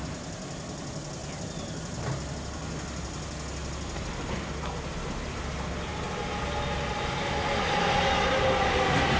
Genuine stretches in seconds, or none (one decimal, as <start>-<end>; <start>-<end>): 0.0-9.2

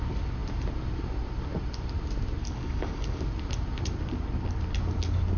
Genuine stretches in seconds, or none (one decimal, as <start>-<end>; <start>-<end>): 0.0-2.4; 3.2-5.4

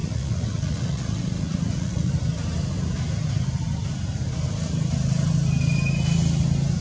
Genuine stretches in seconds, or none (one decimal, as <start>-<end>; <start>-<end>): 2.1-6.8